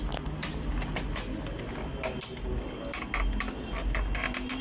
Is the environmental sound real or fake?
real